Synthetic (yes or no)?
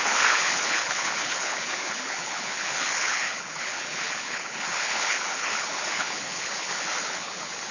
yes